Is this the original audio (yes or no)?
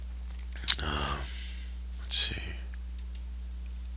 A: yes